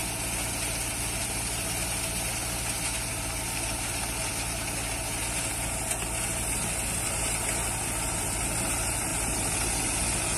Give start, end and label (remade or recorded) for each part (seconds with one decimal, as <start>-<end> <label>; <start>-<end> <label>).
0.0-10.4 recorded